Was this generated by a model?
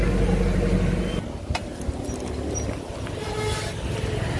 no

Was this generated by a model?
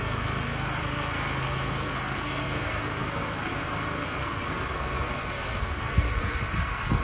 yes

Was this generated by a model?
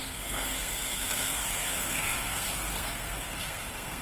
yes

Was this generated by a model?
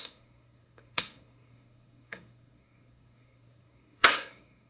yes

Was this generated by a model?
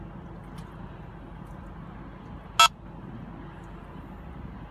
no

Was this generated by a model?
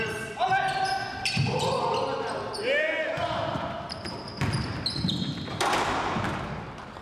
no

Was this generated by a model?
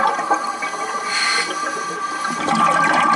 no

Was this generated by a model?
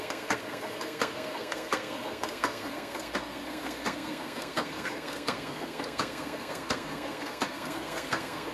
yes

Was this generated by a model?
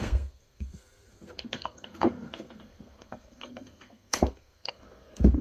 yes